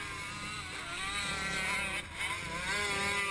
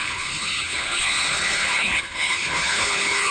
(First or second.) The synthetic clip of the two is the second